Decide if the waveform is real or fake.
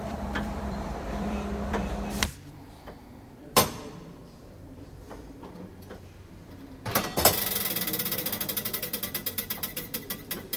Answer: fake